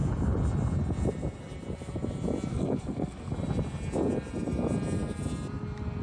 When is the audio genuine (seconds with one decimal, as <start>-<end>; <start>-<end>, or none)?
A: 0.0-2.5; 3.3-6.0